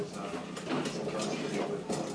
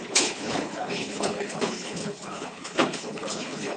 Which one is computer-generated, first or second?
second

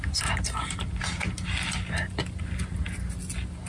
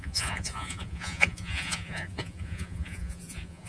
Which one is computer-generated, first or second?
second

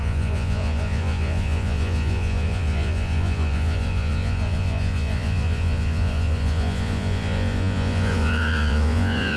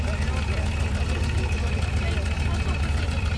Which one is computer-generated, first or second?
first